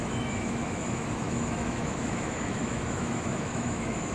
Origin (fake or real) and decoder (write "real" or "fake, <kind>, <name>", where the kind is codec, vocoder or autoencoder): fake, autoencoder, DAC-VAE